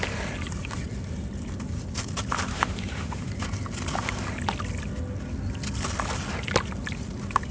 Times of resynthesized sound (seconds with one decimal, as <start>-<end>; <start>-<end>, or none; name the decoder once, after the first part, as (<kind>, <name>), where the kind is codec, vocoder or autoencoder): 2.5-3.3 (autoencoder, DAC-VAE)